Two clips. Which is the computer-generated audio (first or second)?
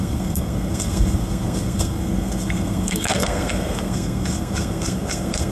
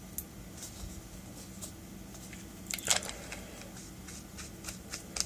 first